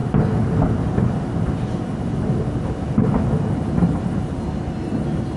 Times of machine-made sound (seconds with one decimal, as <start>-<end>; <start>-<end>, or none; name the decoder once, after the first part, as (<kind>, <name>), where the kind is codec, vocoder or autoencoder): none